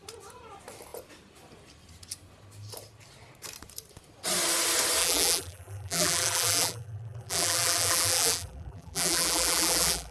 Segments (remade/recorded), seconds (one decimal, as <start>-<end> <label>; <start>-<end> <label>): 0.0-5.0 recorded; 5.0-10.1 remade